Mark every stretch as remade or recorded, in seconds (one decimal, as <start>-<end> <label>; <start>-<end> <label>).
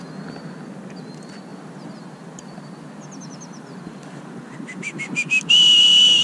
0.0-6.2 recorded